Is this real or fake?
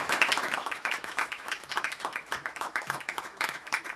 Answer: fake